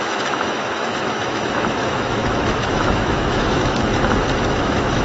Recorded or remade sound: remade